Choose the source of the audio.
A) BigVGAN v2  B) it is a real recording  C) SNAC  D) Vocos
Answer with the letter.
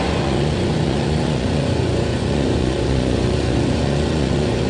D